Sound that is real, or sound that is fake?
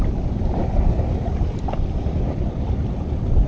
real